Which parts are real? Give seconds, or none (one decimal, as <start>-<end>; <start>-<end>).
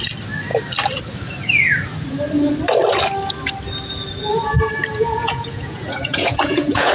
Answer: 0.0-4.9